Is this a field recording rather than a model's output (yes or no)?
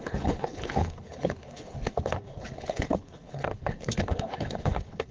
no